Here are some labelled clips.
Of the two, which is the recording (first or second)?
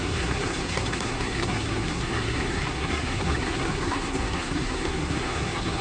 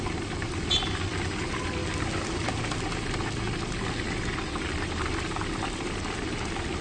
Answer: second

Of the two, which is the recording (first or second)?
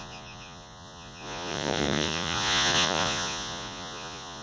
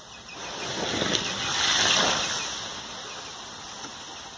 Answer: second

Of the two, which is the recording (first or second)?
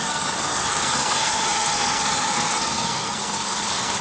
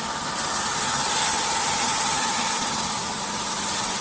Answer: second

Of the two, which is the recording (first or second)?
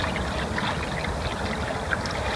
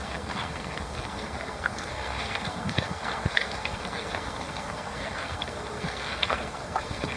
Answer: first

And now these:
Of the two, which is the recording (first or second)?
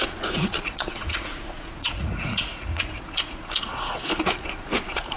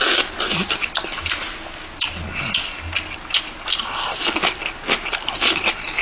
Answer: second